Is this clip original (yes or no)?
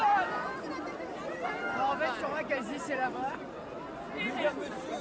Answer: yes